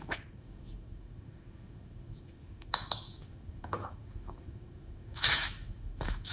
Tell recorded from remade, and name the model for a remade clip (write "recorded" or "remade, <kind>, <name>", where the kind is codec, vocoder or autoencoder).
remade, autoencoder, DAC-VAE